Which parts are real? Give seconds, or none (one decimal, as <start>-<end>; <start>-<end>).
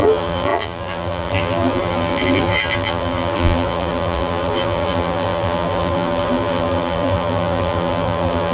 none